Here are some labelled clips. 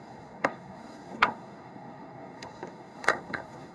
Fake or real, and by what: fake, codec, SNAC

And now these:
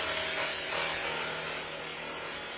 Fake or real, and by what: real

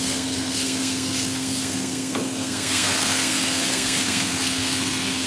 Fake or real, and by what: fake, codec, SNAC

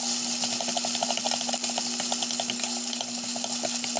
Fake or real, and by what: real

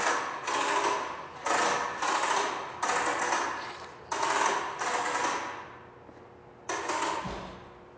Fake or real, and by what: real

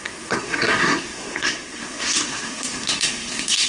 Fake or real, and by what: fake, codec, SNAC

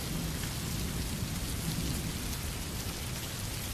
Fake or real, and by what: real